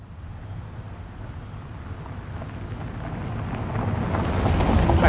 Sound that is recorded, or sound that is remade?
recorded